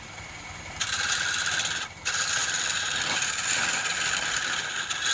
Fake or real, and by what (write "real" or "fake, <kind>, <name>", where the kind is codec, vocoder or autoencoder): fake, vocoder, BigVGAN v2